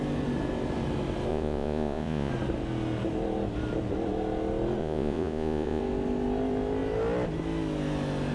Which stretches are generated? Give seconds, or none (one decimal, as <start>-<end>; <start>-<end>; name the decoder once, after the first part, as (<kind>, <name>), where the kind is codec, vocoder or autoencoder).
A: 1.3-2.3 (vocoder, Vocos); 4.8-5.8

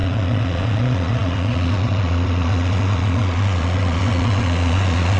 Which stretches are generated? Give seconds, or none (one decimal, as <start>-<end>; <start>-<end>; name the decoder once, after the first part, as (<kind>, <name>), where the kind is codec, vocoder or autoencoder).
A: 0.0-5.2 (vocoder, Vocos)